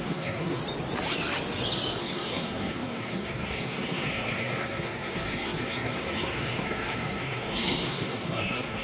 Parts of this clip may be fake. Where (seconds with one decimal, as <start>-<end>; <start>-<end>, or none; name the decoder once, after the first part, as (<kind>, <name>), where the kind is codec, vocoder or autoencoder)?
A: 0.0-0.6 (codec, SNAC); 2.0-8.8